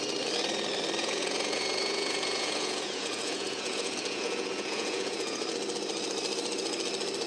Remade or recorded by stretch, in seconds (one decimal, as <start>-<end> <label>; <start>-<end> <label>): 0.0-1.0 recorded; 1.0-5.4 remade; 5.4-7.3 recorded